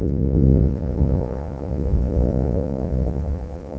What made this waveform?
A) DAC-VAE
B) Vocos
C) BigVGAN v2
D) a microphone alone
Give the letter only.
B